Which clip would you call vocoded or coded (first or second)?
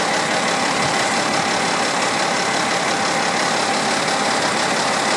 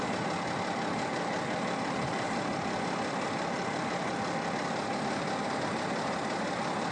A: second